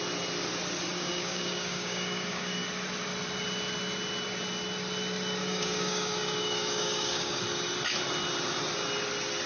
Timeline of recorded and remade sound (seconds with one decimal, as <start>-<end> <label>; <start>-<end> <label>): 0.0-0.9 recorded; 0.9-2.6 remade; 2.6-5.4 recorded; 5.4-7.4 remade; 7.4-9.5 recorded